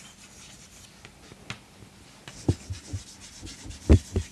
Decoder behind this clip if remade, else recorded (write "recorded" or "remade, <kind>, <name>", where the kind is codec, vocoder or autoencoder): recorded